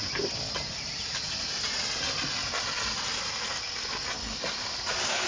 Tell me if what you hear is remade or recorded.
recorded